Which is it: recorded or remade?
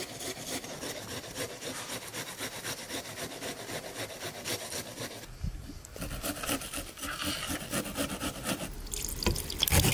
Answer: recorded